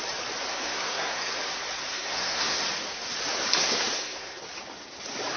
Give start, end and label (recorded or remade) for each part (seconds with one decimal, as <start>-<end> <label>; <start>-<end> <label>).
0.0-0.5 recorded; 0.5-1.3 remade; 1.3-1.9 recorded; 1.9-2.6 remade; 2.6-3.6 recorded; 3.6-4.4 remade; 4.4-5.4 recorded